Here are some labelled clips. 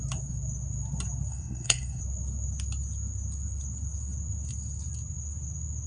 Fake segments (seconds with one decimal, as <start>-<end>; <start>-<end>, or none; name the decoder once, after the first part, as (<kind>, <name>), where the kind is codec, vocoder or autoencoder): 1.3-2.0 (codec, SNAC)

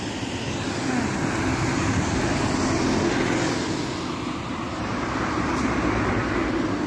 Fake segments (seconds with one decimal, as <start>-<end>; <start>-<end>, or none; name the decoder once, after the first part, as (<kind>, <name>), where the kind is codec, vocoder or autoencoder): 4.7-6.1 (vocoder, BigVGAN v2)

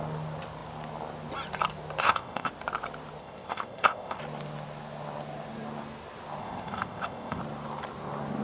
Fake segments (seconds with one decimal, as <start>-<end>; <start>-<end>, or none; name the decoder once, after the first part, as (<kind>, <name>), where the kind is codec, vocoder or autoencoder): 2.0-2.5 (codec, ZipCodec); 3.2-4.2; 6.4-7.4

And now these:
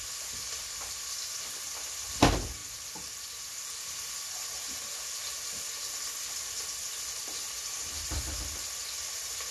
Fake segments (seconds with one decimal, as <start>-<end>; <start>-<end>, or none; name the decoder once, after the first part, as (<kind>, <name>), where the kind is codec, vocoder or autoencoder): none

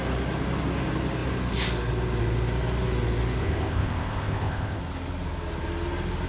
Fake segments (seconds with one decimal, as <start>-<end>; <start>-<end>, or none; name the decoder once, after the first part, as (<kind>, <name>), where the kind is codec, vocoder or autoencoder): 3.4-4.8 (codec, ZipCodec)

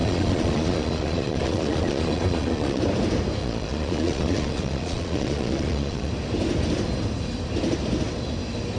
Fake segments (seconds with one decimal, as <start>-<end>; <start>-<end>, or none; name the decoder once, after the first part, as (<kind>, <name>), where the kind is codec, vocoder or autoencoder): 0.0-2.8 (vocoder, Vocos); 3.4-6.1